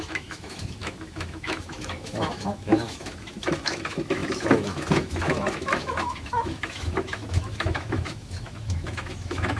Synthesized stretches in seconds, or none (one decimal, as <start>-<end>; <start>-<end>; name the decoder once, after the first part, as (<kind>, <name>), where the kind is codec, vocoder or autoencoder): 0.0-9.6 (autoencoder, DAC-VAE)